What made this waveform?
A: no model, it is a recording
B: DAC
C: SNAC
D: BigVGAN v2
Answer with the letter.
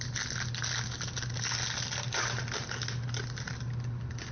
A